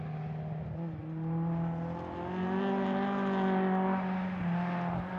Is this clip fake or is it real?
real